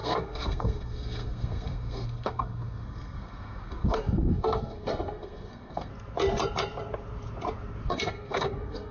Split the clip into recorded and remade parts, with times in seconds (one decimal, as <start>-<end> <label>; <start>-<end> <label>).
0.0-5.9 remade; 5.9-7.9 recorded; 7.9-8.9 remade